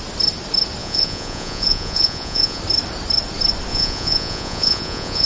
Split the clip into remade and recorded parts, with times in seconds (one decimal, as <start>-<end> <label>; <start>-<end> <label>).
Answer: 0.0-0.8 recorded; 0.8-2.6 remade; 2.6-3.7 recorded; 3.7-5.3 remade

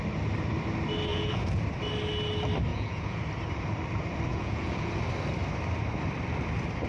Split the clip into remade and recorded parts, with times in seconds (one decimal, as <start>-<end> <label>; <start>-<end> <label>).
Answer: 0.0-1.1 recorded; 1.1-1.6 remade; 1.6-2.7 recorded; 2.7-3.2 remade; 3.2-4.3 recorded; 4.3-4.9 remade; 4.9-6.9 recorded

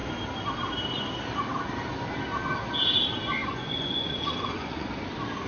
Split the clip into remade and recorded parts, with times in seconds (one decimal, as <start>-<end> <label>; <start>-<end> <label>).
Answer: 0.0-3.4 recorded; 3.4-4.9 remade; 4.9-5.5 recorded